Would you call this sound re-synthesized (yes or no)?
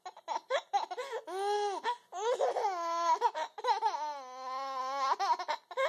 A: no